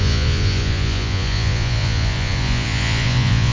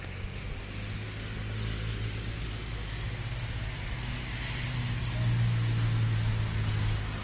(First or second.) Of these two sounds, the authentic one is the second